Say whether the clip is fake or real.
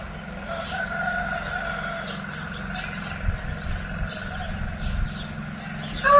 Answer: real